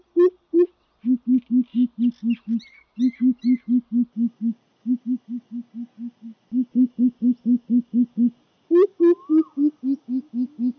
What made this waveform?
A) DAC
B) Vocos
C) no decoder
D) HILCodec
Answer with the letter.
C